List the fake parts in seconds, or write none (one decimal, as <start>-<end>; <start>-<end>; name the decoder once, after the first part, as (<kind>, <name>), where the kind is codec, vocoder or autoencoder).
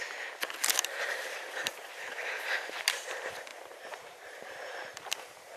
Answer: 1.1-1.7 (vocoder, BigVGAN v2); 3.5-5.6